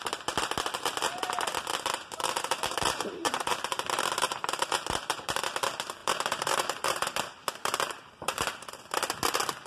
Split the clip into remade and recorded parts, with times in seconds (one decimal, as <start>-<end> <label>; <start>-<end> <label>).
0.0-1.7 recorded; 1.7-5.4 remade; 5.4-6.0 recorded; 6.0-8.8 remade; 8.8-9.7 recorded